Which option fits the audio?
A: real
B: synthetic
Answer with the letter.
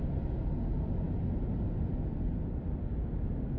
A